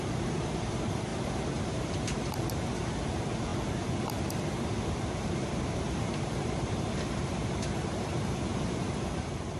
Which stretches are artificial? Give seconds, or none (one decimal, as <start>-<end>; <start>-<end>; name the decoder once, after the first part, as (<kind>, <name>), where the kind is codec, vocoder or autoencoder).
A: 0.0-3.5 (vocoder, BigVGAN v2); 4.8-9.6

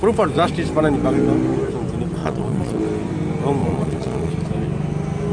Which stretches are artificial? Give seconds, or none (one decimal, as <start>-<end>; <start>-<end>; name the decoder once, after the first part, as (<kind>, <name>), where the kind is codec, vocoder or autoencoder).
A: 2.2-2.8 (vocoder, Vocos); 3.6-4.3

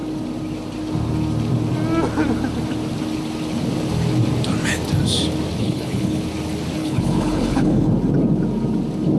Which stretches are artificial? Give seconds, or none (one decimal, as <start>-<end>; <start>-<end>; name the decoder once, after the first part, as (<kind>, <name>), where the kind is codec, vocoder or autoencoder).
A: 5.6-6.2 (codec, HILCodec); 6.8-7.9

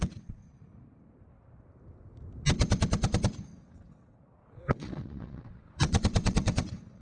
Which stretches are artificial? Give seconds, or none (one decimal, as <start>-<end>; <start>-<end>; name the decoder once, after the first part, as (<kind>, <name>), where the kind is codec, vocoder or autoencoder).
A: 0.0-0.4 (vocoder, WaveNeXt); 3.6-7.0